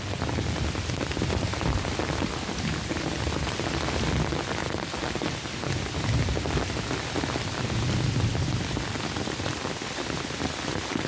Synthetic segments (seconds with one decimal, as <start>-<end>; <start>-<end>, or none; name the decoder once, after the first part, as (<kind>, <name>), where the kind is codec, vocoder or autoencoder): none